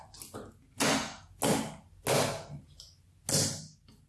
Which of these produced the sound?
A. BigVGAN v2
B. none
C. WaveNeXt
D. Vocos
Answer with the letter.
B